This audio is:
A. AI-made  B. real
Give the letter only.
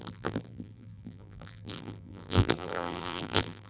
A